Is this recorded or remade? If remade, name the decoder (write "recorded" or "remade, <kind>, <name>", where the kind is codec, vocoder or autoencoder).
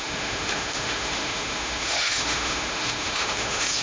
remade, autoencoder, DAC-VAE